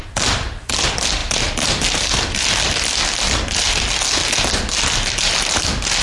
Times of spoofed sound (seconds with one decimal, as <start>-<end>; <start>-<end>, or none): none